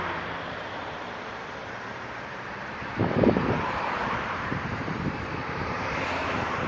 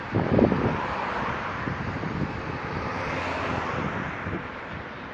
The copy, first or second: first